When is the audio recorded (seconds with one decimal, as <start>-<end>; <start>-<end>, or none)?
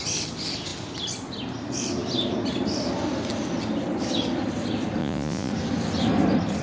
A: 0.0-5.0; 5.5-6.6